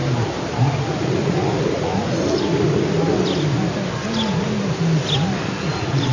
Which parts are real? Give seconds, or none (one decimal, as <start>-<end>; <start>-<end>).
0.0-1.0; 1.9-5.6